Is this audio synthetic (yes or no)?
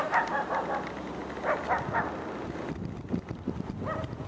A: no